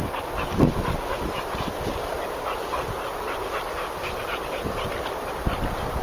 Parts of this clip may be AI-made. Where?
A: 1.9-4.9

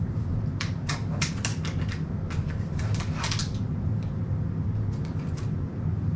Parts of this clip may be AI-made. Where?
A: none

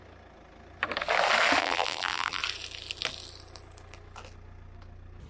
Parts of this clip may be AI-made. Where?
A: 1.6-2.4

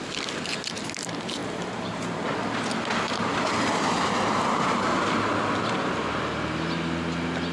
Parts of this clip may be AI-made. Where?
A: 1.4-2.2; 3.3-5.1

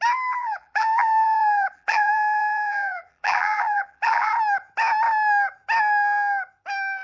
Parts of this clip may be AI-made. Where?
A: 0.4-4.3